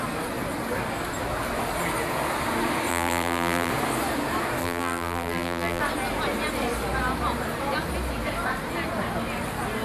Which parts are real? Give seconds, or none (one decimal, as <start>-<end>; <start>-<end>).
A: 0.0-2.9; 3.7-4.6; 5.8-9.8